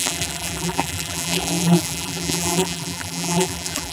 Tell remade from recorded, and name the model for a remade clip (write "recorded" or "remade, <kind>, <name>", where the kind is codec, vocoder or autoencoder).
remade, vocoder, BigVGAN v2